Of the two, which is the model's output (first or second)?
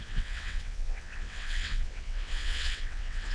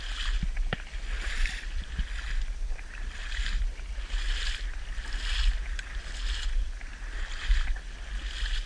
first